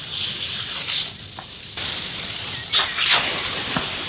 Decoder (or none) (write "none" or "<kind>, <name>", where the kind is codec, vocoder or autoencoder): none